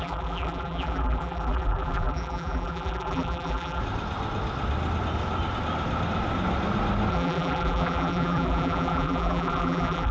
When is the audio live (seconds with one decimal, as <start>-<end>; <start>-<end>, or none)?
3.8-7.1